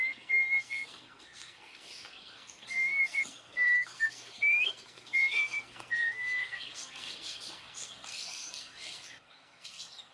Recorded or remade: remade